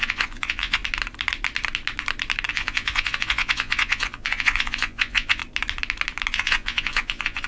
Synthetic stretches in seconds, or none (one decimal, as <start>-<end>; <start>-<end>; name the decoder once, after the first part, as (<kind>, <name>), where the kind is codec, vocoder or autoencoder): 0.0-0.8 (vocoder, Vocos); 2.5-5.4; 6.3-7.5